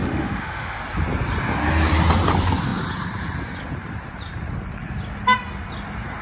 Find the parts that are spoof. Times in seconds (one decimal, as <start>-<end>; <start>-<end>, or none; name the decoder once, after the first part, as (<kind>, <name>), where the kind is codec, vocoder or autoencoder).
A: 0.0-0.8 (autoencoder, DAC-VAE)

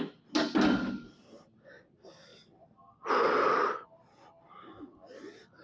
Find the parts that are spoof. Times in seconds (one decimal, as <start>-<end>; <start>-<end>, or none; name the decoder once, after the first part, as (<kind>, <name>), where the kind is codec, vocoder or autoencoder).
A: none

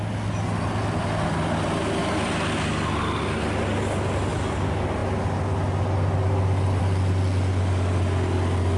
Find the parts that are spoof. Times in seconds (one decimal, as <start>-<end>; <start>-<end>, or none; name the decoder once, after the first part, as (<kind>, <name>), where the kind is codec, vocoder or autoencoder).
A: none

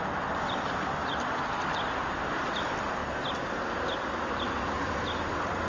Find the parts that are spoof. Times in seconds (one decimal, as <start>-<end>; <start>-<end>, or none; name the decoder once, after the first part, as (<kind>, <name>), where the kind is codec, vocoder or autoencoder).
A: 1.0-2.6 (vocoder, BigVGAN v2)